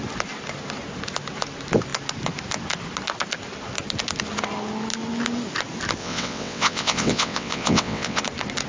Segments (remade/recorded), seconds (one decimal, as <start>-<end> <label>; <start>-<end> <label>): 0.0-6.0 recorded; 6.0-8.2 remade; 8.2-8.7 recorded